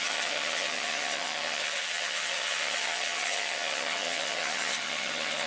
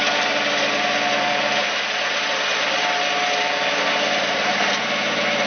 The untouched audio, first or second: second